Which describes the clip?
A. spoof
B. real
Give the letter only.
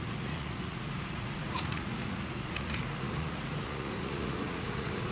A